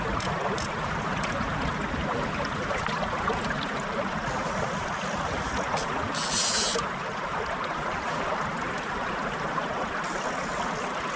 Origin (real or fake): real